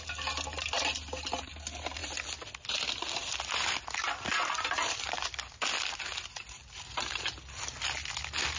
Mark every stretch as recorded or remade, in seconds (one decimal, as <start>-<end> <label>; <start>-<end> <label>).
0.0-8.6 recorded